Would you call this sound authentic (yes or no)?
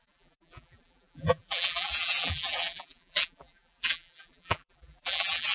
no